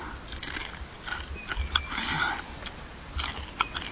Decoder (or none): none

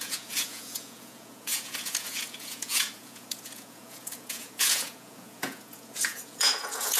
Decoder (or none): vocoder, Vocos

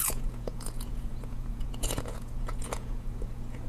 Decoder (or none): vocoder, Vocos